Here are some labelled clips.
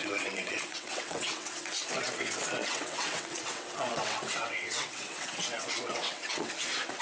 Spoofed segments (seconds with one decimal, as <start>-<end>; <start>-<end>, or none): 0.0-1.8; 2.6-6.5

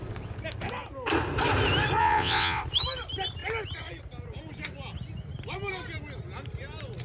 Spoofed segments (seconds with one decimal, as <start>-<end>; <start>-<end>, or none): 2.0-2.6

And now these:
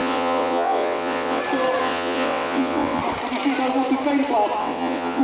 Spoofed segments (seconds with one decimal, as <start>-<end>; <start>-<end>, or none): 0.0-1.4; 1.8-3.0; 4.6-5.2